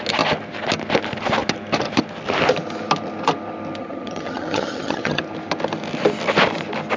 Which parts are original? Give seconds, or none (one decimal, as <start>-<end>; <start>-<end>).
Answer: 0.0-3.8; 5.2-7.0